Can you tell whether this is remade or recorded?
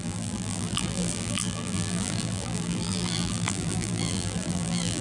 remade